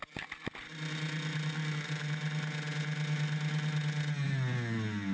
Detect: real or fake real